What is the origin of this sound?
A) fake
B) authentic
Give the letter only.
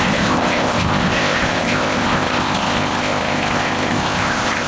A